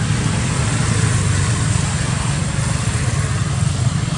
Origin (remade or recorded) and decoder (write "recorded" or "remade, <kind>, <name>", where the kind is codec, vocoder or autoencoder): recorded